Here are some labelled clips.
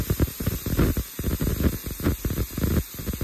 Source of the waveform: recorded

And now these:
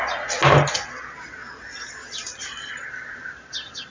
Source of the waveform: recorded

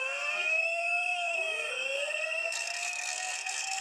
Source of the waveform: remade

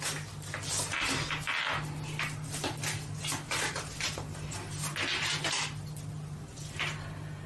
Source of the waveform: recorded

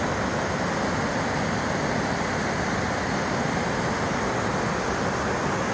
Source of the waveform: recorded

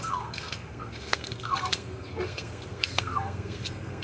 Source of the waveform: remade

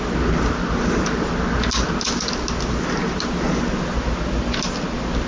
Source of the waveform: recorded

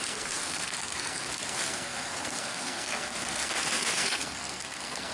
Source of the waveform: remade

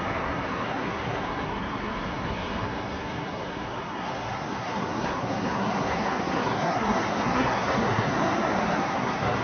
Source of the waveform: remade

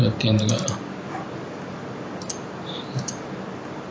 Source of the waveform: recorded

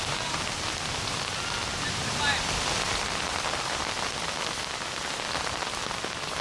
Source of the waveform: recorded